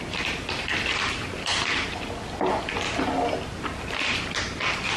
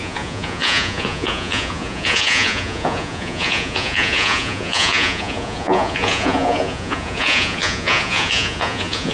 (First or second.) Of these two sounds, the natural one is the first